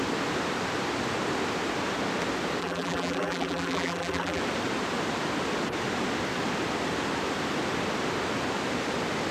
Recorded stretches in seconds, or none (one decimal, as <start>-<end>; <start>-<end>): 0.0-2.6; 4.4-9.3